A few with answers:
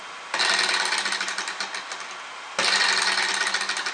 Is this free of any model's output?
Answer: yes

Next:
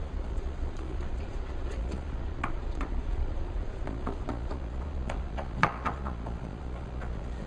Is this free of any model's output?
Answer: no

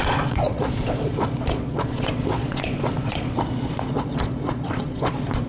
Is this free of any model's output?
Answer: no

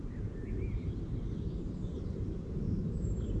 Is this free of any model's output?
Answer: yes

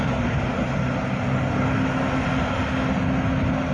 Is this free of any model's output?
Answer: yes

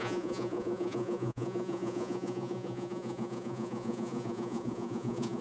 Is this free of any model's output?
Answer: no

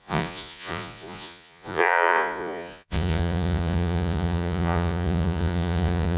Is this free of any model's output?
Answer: no